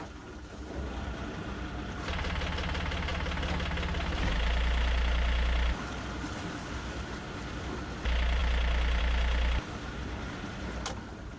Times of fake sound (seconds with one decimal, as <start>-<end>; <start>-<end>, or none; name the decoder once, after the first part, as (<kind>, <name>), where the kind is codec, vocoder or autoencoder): none